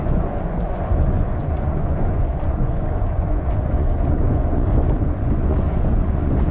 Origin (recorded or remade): remade